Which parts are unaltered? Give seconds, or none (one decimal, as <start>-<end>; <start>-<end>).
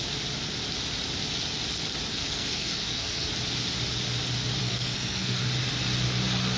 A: 0.0-2.1; 3.3-4.6; 5.4-6.6